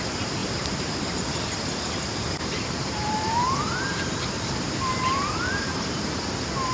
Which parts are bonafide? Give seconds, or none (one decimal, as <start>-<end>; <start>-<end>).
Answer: 0.4-2.4